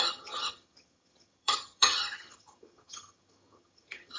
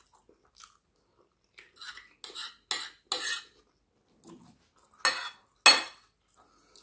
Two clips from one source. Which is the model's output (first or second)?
first